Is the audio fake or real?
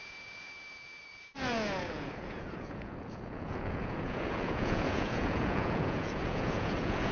fake